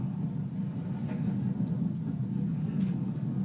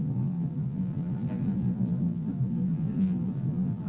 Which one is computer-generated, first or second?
second